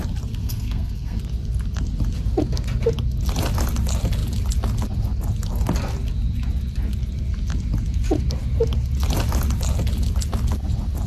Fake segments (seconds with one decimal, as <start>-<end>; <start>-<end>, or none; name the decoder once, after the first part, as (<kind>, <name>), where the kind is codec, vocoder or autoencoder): 0.4-1.2 (codec, SNAC)